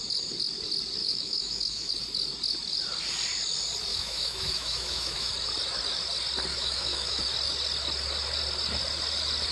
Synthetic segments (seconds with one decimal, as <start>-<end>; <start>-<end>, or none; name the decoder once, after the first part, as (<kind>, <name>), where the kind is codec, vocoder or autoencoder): 1.0-1.9 (autoencoder, DAC-VAE); 3.9-5.3; 6.5-7.2